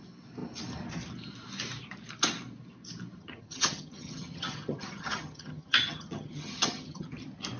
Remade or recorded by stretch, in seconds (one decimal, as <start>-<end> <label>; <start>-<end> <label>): 0.0-3.2 recorded; 3.2-7.1 remade; 7.1-7.6 recorded